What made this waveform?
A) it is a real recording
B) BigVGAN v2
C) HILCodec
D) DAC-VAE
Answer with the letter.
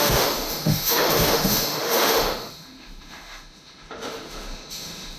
D